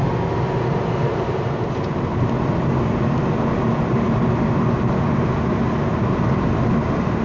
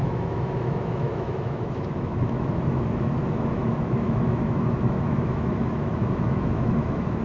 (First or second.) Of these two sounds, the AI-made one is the second